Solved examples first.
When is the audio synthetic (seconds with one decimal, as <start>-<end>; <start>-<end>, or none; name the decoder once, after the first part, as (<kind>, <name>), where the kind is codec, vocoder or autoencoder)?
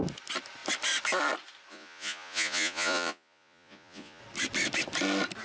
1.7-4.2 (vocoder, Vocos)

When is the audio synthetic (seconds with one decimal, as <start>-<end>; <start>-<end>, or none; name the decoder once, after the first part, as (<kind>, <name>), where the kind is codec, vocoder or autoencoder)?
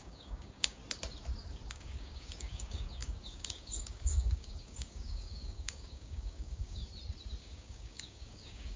0.0-0.8 (codec, DAC); 1.7-6.8; 7.4-8.8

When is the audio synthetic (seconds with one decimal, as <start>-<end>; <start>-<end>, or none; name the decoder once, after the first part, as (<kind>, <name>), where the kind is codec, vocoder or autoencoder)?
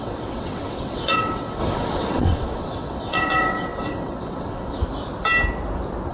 0.0-4.8 (vocoder, WaveNeXt)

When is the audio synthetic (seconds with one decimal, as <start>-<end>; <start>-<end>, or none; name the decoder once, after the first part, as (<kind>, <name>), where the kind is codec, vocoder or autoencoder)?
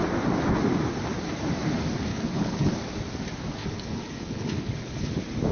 2.1-2.7 (codec, HILCodec); 3.6-5.1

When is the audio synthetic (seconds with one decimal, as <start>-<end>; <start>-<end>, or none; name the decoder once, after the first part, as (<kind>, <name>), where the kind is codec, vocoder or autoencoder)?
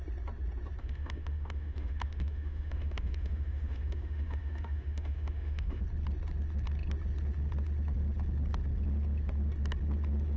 0.8-5.8 (autoencoder, DAC-VAE)